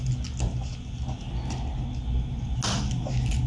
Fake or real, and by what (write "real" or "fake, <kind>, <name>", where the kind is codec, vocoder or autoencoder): real